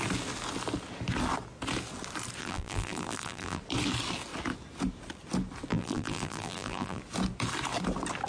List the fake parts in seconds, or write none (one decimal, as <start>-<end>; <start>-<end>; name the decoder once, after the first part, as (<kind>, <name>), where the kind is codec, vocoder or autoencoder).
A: 2.4-3.6 (vocoder, BigVGAN v2); 5.7-7.0